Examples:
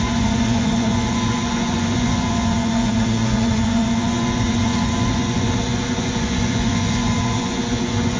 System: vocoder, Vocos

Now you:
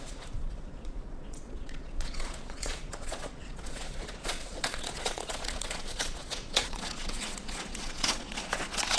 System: vocoder, Vocos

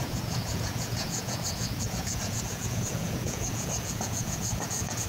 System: vocoder, Vocos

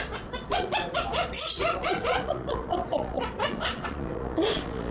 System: vocoder, Vocos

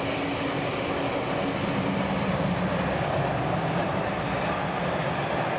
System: none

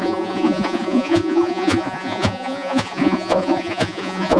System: vocoder, Vocos